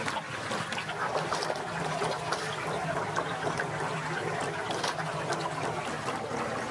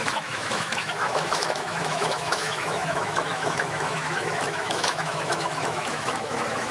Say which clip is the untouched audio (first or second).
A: first